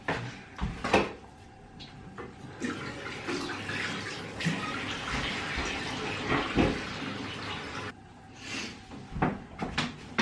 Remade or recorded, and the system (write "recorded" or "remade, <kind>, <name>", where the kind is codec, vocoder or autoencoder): recorded